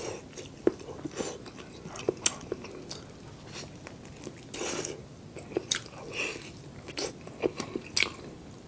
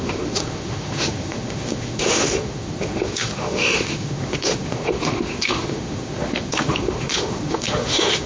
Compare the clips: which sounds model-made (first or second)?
second